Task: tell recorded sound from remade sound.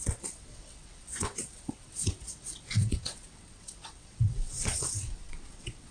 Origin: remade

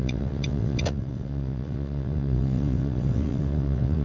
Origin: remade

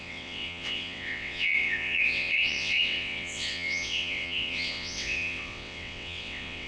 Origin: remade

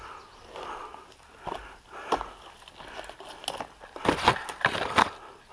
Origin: recorded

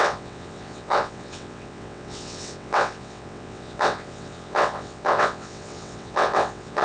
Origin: remade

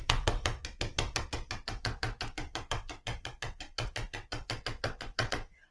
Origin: remade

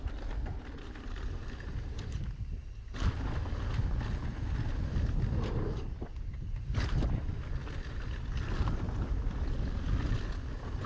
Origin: recorded